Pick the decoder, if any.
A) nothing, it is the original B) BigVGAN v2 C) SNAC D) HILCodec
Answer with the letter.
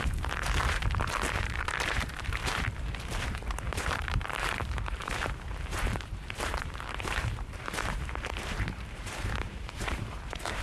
B